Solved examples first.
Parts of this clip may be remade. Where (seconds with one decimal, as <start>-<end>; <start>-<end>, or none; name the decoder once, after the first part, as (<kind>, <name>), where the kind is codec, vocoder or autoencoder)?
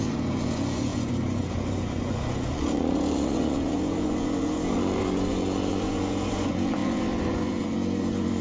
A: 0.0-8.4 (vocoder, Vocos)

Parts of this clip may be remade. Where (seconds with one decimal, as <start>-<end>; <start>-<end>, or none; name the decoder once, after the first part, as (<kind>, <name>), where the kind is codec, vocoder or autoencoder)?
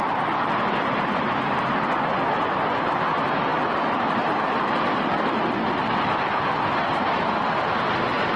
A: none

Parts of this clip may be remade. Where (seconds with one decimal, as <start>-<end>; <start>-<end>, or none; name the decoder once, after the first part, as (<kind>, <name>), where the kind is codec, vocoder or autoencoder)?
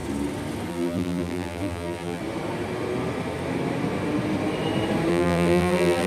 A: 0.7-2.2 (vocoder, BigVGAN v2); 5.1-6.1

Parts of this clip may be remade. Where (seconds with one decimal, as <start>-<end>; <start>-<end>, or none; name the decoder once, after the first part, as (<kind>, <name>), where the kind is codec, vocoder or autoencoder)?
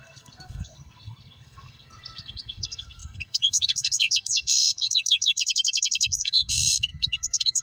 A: 0.0-7.6 (codec, SNAC)